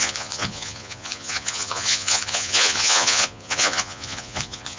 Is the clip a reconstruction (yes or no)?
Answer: yes